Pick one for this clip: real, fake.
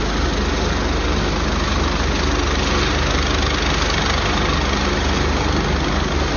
real